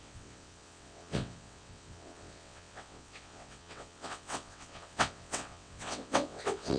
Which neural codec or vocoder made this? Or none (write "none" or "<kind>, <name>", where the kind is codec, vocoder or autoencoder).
vocoder, WaveNeXt